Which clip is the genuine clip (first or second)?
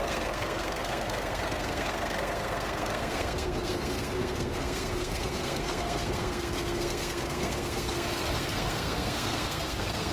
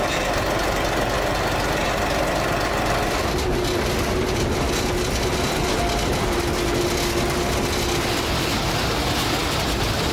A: second